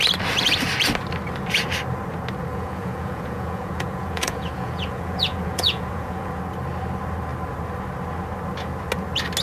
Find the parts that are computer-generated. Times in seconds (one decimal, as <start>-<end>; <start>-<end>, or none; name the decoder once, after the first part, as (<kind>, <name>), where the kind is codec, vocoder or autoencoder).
2.5-6.4 (vocoder, Vocos)